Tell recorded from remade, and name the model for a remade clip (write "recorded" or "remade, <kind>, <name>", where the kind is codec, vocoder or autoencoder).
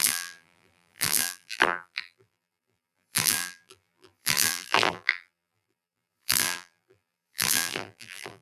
remade, vocoder, BigVGAN v2